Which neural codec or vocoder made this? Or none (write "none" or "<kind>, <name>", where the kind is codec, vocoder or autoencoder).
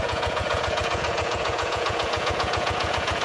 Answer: vocoder, Vocos